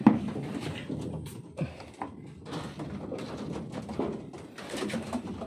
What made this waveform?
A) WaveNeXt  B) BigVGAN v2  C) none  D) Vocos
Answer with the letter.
B